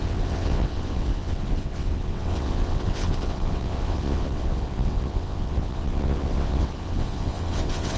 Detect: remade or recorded remade